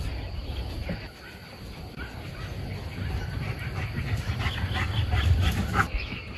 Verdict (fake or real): real